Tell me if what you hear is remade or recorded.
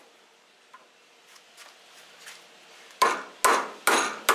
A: recorded